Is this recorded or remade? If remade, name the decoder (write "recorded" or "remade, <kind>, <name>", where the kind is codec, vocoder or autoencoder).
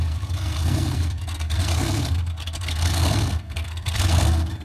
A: remade, codec, SNAC